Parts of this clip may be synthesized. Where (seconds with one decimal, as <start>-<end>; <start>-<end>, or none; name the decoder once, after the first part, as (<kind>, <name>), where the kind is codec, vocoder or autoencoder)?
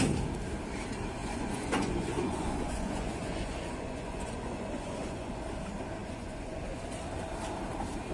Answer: 1.2-5.4 (vocoder, Vocos); 6.0-6.8